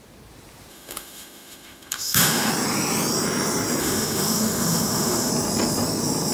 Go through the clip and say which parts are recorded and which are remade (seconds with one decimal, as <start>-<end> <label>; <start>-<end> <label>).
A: 0.0-0.7 recorded; 0.7-2.5 remade; 2.5-3.8 recorded; 3.8-5.3 remade; 5.3-6.3 recorded